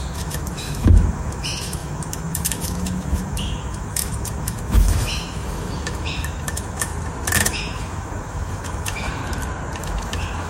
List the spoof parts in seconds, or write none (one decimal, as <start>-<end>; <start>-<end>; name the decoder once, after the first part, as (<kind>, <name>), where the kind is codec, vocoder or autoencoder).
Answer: 0.0-6.9 (autoencoder, DAC-VAE); 7.4-9.2; 9.8-10.5